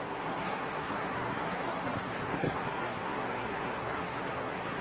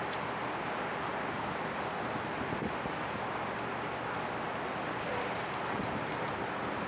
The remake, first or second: first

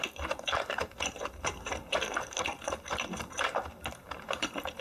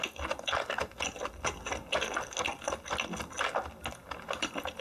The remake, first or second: first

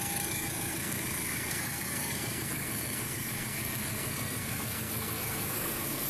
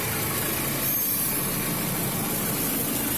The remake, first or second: first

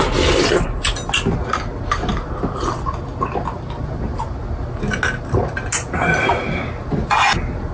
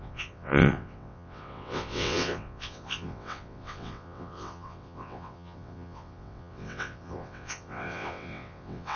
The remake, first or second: second